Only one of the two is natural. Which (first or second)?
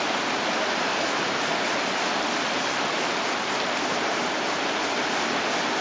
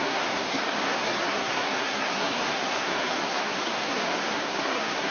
first